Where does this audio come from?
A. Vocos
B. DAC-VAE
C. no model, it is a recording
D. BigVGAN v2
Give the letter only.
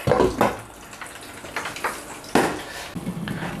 C